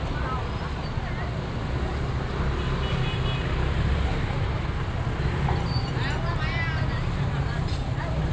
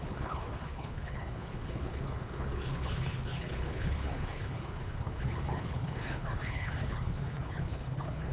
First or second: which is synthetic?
second